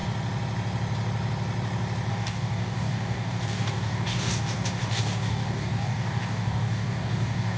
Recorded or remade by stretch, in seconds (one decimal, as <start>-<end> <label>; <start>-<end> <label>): 0.0-2.1 recorded; 2.1-7.6 remade